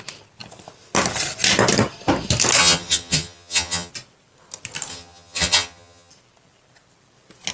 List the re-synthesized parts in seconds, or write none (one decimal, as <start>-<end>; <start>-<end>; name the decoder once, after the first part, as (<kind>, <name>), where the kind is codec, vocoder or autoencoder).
2.6-3.9 (vocoder, HiFi-GAN); 4.9-6.1